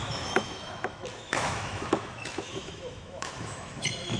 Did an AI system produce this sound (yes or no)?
yes